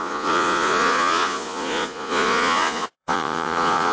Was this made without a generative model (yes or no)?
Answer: no